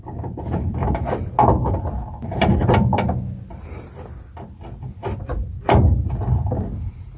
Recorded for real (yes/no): yes